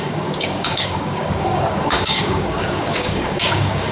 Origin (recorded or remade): remade